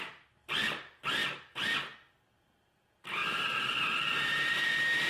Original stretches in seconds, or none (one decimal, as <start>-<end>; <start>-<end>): 0.0-3.2; 4.5-5.1